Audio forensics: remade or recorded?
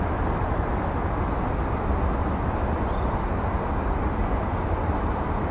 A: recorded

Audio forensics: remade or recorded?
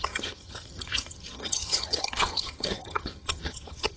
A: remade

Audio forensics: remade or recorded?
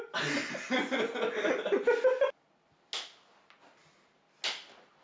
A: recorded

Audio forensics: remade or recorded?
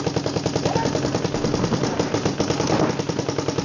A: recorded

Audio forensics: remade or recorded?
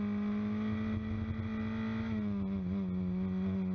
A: recorded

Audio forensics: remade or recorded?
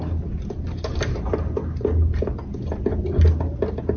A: recorded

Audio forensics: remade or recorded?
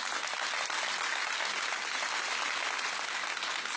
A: recorded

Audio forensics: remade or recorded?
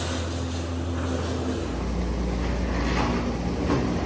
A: recorded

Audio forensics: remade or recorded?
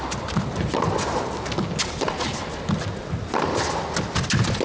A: recorded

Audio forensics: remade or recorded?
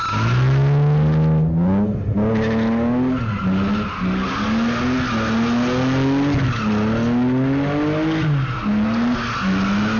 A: recorded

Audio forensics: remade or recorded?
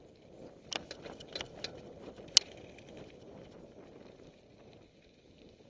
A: recorded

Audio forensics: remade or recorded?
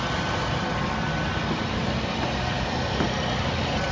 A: recorded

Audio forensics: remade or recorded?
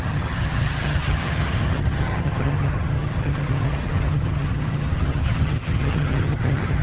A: remade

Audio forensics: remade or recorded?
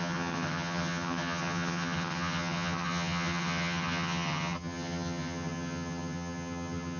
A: remade